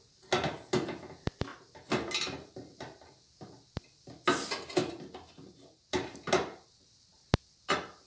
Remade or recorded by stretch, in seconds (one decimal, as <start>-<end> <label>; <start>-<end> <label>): 0.0-8.1 recorded